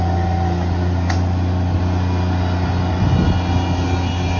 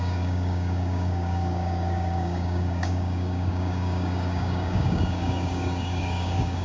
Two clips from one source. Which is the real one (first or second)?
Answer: first